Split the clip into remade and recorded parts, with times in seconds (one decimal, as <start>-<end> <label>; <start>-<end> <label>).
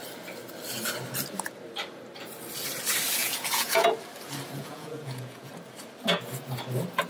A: 0.0-3.2 recorded; 3.2-3.9 remade; 3.9-4.6 recorded; 4.6-5.5 remade; 5.5-7.1 recorded